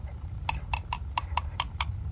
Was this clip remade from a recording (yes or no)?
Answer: no